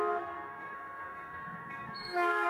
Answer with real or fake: fake